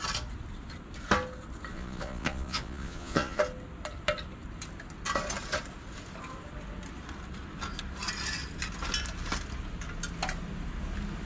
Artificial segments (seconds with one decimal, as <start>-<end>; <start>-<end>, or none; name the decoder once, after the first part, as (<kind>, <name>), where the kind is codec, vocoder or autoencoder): 1.7-3.4 (vocoder, Vocos)